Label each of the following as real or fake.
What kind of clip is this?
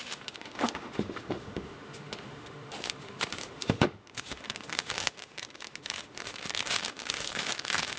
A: fake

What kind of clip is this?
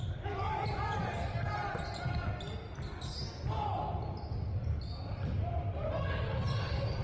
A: real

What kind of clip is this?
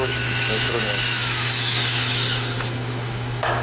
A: fake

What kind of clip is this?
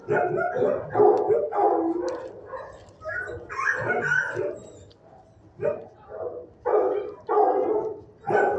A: real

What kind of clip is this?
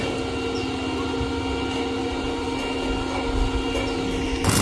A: real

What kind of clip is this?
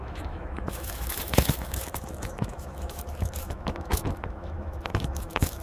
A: fake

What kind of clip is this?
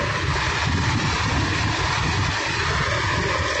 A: real